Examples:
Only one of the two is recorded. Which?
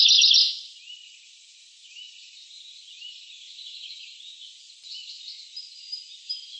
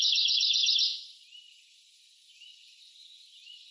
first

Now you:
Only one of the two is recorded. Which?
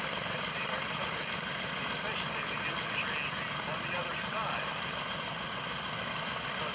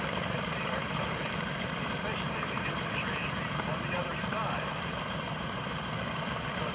first